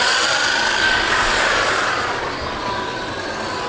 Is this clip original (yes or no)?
yes